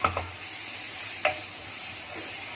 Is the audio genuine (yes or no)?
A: yes